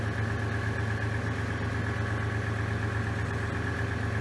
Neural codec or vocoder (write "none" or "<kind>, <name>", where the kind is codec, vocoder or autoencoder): none